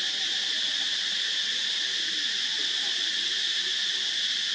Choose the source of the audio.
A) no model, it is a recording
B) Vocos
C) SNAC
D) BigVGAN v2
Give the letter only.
A